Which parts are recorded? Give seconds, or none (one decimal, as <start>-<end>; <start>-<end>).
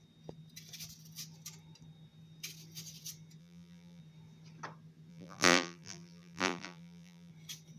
0.0-3.4; 4.0-5.1; 7.3-7.8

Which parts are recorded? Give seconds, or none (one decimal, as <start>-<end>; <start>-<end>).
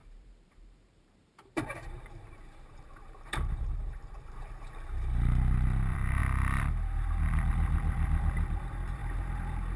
6.2-7.5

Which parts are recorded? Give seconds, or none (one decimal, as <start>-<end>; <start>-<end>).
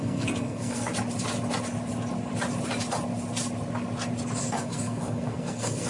0.9-4.4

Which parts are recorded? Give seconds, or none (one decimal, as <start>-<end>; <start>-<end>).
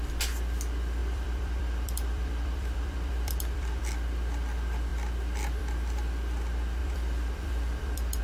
0.0-1.0; 3.8-6.8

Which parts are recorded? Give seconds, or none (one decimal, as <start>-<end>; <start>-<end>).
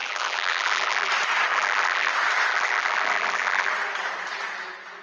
1.1-1.5; 2.1-2.5; 3.7-5.0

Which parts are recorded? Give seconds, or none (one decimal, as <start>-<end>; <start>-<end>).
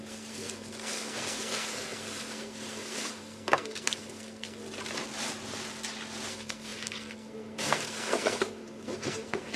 4.6-6.3